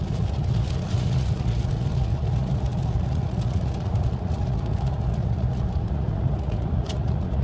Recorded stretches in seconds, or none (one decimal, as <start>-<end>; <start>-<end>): none